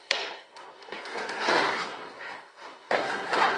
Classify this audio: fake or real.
fake